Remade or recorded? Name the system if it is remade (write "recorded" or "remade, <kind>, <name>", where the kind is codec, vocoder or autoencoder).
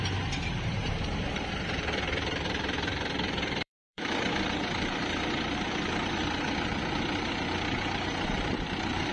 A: remade, vocoder, BigVGAN v2